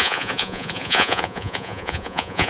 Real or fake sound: fake